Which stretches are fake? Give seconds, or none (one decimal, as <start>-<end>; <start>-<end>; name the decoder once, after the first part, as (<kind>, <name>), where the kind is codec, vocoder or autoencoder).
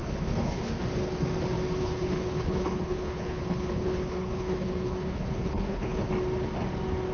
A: 0.0-0.8 (codec, HILCodec); 1.8-6.1